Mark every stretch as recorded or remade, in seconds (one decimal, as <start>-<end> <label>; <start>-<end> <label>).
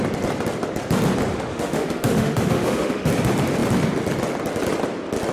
0.0-1.3 recorded; 1.3-3.1 remade; 3.1-5.3 recorded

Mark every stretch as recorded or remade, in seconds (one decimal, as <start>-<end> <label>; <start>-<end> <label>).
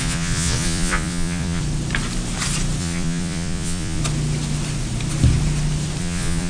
0.0-1.6 remade; 1.6-2.8 recorded; 2.8-4.0 remade; 4.0-6.0 recorded; 6.0-6.5 remade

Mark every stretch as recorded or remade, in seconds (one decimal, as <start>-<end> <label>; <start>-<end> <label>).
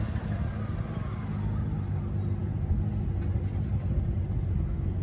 0.0-5.0 recorded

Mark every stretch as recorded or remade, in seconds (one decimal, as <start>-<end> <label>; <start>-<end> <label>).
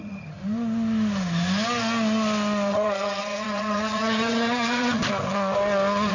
0.0-0.4 remade; 0.4-2.7 recorded; 2.7-5.0 remade; 5.0-6.1 recorded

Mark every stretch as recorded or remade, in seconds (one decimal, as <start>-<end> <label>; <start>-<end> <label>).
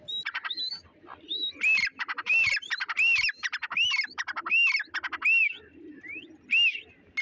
0.0-1.3 recorded; 1.3-4.7 remade; 4.7-7.2 recorded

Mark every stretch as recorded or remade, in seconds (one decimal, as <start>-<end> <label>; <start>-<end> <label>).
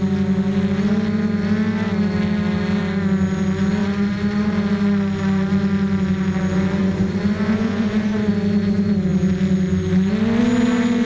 0.0-3.8 recorded; 3.8-4.5 remade; 4.5-6.8 recorded; 6.8-8.3 remade; 8.3-11.0 recorded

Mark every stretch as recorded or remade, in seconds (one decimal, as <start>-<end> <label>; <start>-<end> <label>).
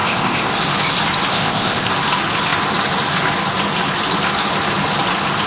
0.0-0.5 remade; 0.5-1.3 recorded; 1.3-1.9 remade; 1.9-5.5 recorded